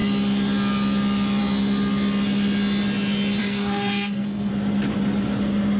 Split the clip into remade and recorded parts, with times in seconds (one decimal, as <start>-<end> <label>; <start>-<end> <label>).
0.0-3.4 recorded; 3.4-4.5 remade; 4.5-5.8 recorded